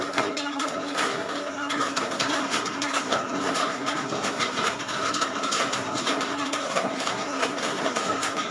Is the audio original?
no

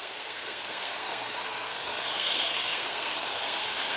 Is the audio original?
no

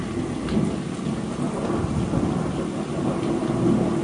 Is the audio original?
yes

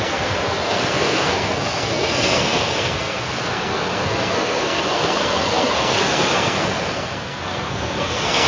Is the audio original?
no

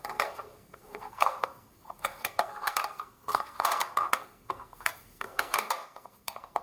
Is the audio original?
no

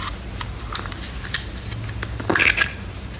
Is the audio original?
yes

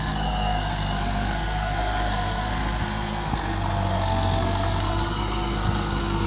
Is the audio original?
no